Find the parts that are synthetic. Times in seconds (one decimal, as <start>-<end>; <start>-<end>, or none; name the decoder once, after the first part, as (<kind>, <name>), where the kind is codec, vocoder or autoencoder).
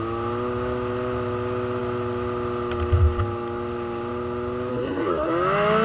4.7-5.3 (codec, SNAC)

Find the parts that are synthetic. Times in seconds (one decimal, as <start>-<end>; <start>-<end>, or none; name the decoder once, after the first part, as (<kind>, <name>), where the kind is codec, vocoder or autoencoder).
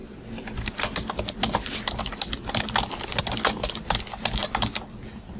none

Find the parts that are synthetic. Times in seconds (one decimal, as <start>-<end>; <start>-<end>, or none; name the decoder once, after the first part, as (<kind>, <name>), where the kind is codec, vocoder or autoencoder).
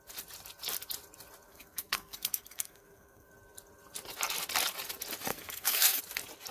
1.5-3.3 (codec, SNAC); 5.3-6.0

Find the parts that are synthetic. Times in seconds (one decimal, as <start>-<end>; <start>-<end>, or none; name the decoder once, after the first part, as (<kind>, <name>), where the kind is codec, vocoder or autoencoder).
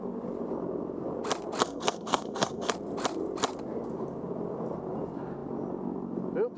1.6-2.7 (codec, SNAC)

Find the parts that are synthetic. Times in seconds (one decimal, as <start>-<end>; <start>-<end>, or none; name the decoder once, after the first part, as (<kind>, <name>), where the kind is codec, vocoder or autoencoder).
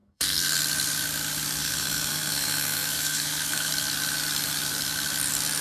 0.0-0.6 (codec, SNAC); 1.6-3.7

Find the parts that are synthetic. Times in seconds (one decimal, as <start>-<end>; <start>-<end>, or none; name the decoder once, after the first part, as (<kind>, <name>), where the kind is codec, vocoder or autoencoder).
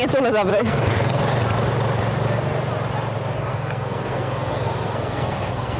0.5-1.2 (codec, SNAC); 3.5-5.8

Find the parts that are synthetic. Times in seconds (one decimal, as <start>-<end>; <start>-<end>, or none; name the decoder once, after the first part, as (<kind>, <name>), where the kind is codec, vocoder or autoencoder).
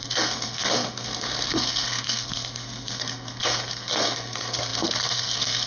0.0-5.7 (codec, SNAC)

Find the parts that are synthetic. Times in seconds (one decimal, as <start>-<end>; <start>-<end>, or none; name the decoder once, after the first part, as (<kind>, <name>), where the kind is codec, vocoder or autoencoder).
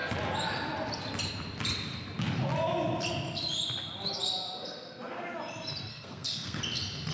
5.9-6.6 (codec, SNAC)